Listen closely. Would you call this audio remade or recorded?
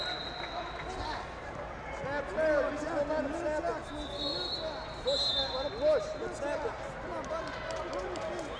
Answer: recorded